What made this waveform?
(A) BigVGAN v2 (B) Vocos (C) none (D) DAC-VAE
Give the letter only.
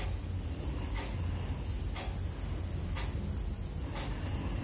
C